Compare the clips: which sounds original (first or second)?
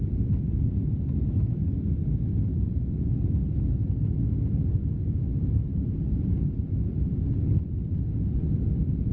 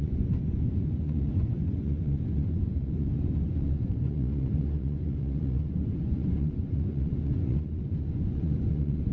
first